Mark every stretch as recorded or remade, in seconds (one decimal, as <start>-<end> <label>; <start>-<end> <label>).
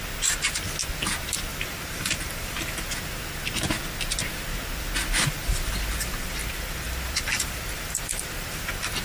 0.0-1.5 recorded; 1.5-2.9 remade; 2.9-5.0 recorded; 5.0-9.0 remade